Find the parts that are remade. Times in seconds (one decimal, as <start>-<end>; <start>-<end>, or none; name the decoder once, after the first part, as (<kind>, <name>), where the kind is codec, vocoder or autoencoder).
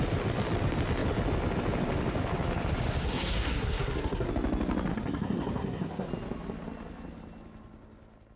3.0-4.3 (codec, SNAC); 4.9-6.1